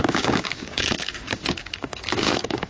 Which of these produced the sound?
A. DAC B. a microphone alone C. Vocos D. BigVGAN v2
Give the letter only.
A